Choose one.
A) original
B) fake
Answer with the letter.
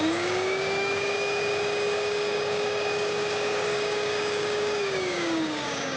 B